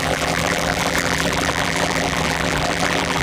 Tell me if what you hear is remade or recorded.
remade